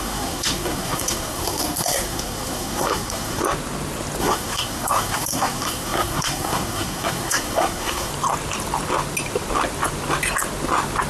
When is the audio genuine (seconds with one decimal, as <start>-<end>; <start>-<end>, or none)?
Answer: 3.4-4.2; 8.1-11.1